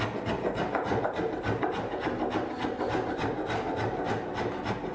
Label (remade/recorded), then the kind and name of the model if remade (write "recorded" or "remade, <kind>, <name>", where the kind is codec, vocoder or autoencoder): recorded